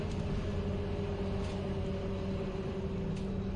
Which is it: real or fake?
real